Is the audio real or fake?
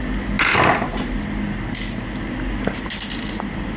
real